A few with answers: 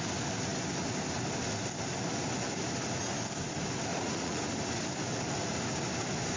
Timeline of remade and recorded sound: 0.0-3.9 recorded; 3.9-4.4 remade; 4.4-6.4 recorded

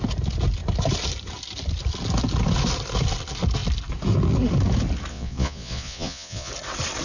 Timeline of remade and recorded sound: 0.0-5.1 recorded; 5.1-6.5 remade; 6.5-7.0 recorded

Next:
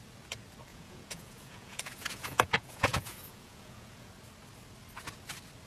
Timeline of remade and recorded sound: 0.0-0.7 recorded; 0.7-4.1 remade; 4.1-5.7 recorded